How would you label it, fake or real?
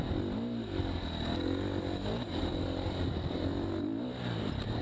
real